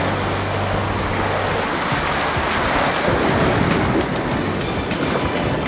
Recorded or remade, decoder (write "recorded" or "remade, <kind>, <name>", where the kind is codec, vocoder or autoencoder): recorded